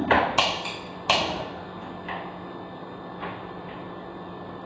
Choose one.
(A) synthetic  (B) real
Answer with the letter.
B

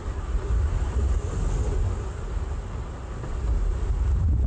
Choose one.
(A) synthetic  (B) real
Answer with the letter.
B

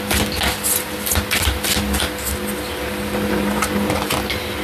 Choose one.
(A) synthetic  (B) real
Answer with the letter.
B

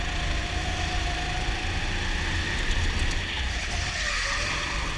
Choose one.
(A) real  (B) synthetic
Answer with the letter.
A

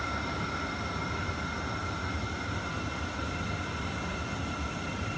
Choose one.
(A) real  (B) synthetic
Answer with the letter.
A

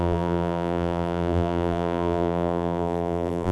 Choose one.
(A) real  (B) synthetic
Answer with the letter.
B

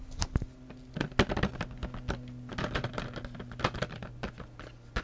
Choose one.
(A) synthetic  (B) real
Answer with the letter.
B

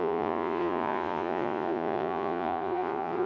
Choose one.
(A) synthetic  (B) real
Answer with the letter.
A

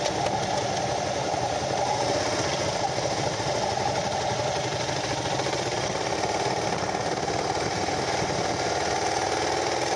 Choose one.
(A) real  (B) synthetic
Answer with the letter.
A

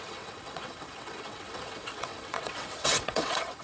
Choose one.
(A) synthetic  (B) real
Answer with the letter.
A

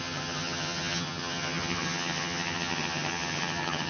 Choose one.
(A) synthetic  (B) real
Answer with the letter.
A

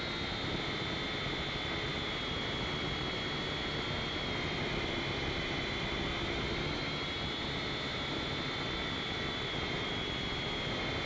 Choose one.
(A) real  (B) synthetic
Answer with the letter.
A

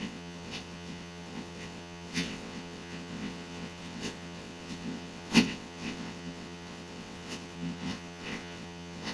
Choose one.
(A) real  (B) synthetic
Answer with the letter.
B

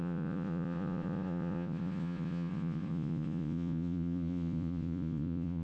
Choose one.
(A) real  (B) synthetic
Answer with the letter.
B